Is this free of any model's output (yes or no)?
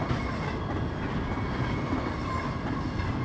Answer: yes